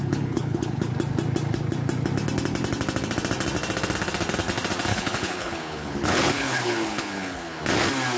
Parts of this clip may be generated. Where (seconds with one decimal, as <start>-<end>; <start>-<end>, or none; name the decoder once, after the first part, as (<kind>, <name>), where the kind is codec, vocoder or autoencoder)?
0.0-0.9 (codec, HILCodec); 4.9-7.6